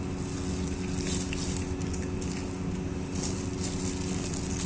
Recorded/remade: recorded